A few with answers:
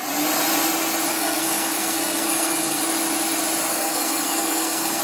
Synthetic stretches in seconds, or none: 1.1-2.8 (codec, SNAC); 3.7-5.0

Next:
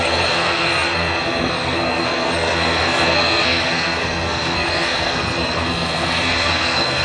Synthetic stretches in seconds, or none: 0.0-7.0 (codec, SNAC)

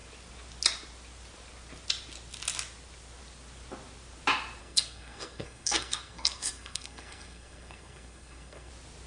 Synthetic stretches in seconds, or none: 4.6-8.7 (codec, SNAC)

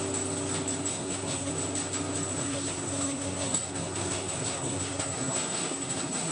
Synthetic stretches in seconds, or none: 0.9-1.5 (codec, SNAC); 2.4-6.3

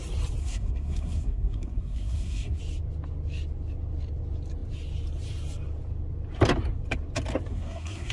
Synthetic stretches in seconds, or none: 0.4-2.6 (codec, SNAC); 7.5-8.1